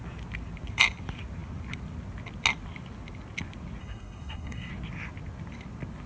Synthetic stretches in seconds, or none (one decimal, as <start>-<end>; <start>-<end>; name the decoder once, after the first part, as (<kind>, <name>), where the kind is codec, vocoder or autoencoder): 3.8-4.7 (codec, SNAC)